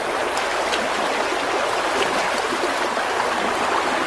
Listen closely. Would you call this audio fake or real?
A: real